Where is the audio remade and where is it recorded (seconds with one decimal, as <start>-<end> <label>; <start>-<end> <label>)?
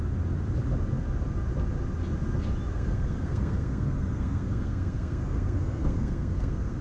0.0-2.7 recorded; 2.7-6.8 remade